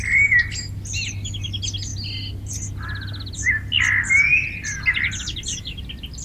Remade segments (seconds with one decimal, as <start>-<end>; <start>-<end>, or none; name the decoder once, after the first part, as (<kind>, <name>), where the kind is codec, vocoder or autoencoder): none